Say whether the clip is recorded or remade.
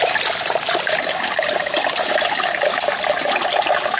recorded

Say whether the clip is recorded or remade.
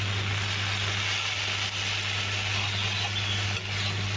recorded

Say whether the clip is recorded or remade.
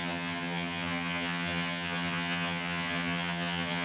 remade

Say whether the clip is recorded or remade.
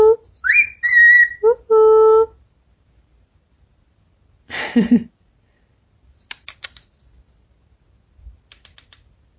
recorded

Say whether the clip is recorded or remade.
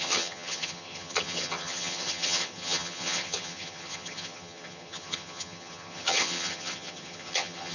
remade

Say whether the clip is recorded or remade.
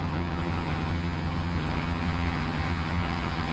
remade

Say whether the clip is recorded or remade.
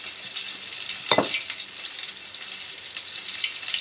recorded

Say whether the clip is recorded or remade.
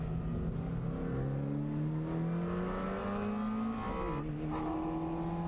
recorded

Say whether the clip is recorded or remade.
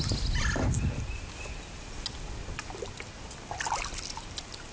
recorded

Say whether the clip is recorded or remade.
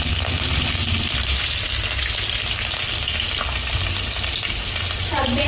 recorded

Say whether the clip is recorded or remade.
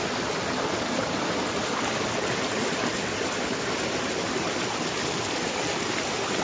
recorded